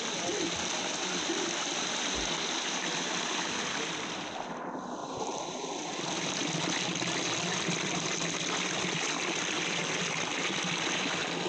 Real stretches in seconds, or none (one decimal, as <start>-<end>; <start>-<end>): 0.0-5.0; 5.9-11.5